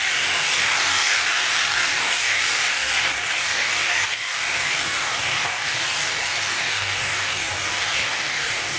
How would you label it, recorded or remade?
remade